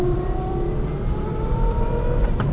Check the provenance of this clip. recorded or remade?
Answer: remade